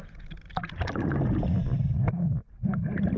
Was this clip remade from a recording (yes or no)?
no